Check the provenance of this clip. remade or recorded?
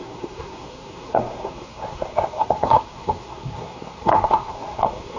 remade